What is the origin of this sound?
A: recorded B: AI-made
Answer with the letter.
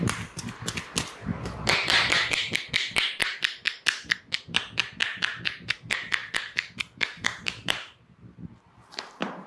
B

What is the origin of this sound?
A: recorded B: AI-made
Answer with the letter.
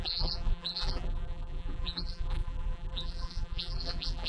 B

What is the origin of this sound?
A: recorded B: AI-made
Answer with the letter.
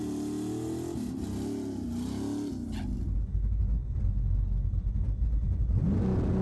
A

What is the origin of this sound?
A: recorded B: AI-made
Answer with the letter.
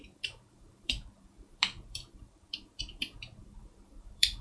B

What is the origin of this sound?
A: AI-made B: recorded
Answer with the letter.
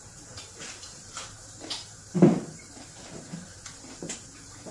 A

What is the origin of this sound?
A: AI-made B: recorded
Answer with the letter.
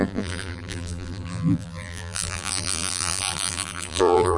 A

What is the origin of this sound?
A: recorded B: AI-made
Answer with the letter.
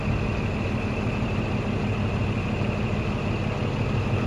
A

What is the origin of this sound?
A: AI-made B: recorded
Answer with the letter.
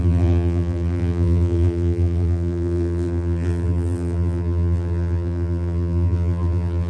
A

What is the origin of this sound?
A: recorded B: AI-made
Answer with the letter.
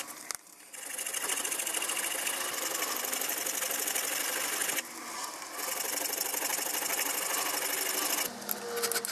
A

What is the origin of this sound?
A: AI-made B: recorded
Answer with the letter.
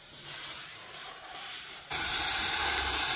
A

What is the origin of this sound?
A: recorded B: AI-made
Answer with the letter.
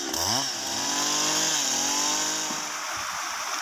A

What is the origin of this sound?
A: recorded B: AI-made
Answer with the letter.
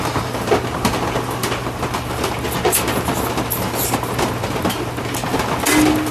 A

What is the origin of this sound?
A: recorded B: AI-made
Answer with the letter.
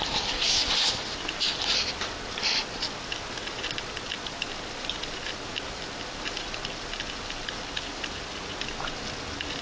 A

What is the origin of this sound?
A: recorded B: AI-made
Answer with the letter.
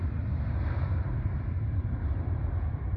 B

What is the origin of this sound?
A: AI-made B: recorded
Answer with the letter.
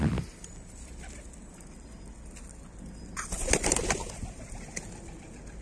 B